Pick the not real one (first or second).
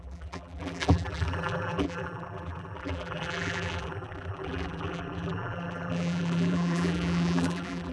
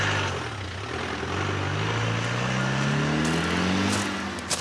first